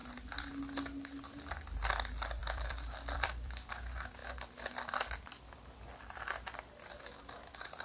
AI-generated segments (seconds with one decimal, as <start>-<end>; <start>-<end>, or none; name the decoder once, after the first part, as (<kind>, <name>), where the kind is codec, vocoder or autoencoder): 2.4-3.8 (vocoder, BigVGAN v2)